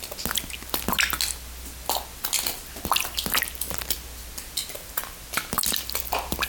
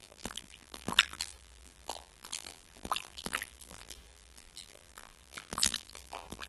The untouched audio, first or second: first